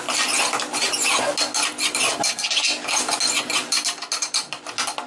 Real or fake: real